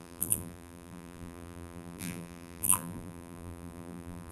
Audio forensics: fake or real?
fake